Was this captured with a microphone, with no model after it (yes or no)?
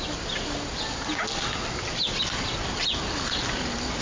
yes